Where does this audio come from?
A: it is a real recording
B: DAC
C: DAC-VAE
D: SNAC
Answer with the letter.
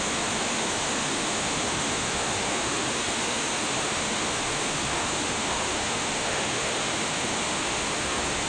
C